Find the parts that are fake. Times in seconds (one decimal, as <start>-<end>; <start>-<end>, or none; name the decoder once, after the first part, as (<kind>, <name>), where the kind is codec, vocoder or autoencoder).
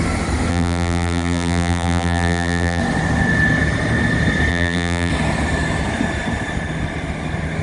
0.5-2.8 (vocoder, BigVGAN v2); 4.5-5.1